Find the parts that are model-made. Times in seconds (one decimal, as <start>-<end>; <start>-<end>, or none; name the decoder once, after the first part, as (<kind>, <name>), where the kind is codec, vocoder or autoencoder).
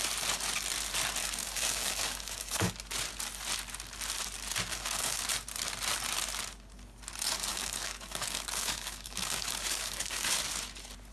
1.2-2.7 (codec, DAC); 4.7-5.2; 7.5-10.4